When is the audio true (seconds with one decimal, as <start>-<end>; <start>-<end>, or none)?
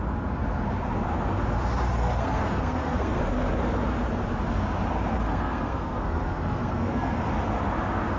0.0-2.0; 3.2-5.1; 7.2-8.2